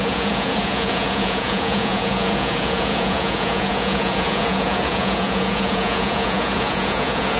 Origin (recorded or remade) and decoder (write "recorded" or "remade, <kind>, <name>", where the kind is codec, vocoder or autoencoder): remade, vocoder, Vocos